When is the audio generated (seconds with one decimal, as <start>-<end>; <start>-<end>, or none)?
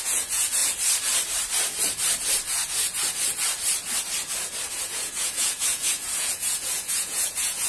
0.0-0.6; 4.7-7.7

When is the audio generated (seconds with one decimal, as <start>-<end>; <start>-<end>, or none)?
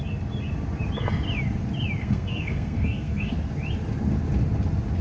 2.0-3.3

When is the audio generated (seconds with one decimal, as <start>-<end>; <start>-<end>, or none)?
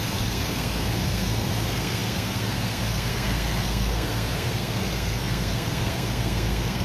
0.0-6.8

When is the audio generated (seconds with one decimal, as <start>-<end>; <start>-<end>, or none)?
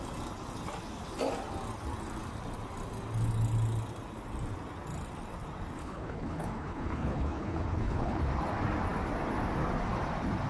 5.8-8.3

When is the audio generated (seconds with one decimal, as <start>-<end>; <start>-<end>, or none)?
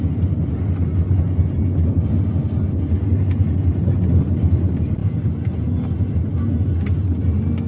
none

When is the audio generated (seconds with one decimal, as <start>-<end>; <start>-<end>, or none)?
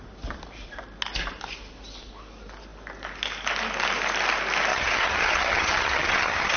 4.7-6.6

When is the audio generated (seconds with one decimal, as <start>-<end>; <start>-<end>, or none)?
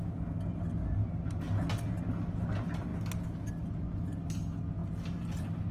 none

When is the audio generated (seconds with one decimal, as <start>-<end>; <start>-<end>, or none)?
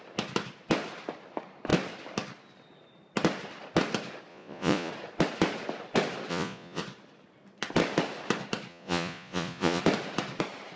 4.3-4.9; 6.3-6.8; 8.7-9.8